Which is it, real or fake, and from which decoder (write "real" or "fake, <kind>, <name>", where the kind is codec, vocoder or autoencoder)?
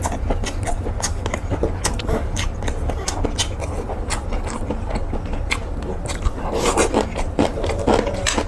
real